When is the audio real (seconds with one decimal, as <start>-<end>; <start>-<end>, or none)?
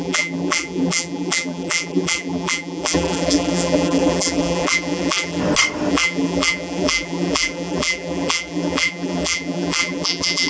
5.4-5.9